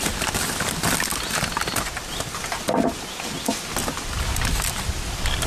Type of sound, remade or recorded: recorded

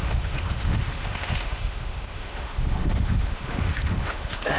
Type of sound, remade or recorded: remade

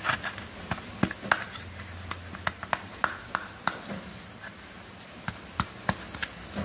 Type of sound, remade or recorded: recorded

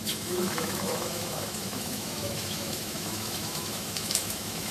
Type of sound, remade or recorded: remade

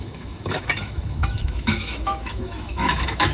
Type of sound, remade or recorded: remade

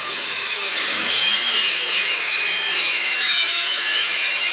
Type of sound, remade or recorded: remade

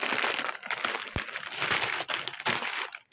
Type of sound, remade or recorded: recorded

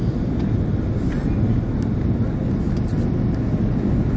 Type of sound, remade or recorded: recorded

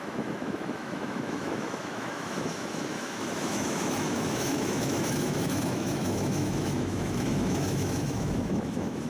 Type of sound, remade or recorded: remade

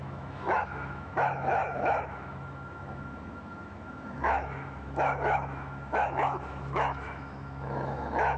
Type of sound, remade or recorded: remade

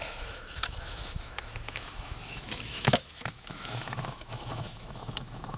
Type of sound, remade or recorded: remade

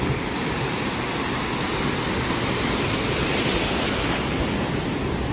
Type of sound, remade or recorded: recorded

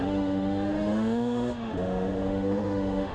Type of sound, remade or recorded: remade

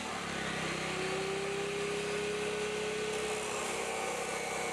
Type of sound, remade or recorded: recorded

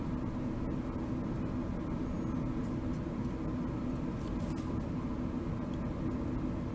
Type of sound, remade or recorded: recorded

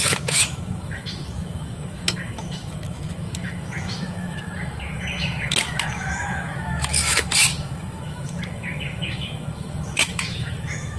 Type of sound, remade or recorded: remade